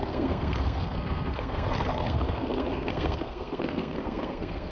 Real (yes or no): no